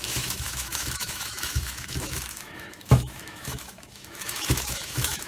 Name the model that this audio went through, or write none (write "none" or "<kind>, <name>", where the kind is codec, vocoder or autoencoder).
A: autoencoder, DAC-VAE